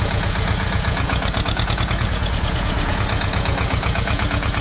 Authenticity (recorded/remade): remade